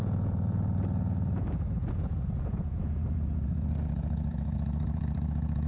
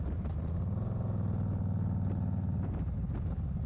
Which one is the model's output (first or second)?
first